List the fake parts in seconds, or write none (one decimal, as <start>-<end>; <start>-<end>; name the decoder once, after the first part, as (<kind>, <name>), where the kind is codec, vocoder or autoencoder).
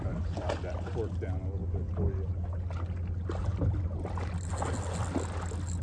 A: none